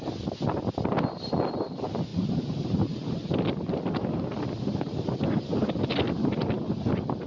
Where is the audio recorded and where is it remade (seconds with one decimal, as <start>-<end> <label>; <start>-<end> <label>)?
0.0-7.3 recorded